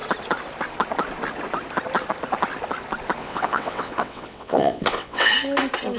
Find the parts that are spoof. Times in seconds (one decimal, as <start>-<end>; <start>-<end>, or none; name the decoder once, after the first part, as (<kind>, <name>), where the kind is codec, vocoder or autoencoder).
3.2-5.3 (vocoder, WaveNeXt)